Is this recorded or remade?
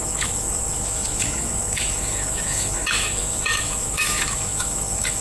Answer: remade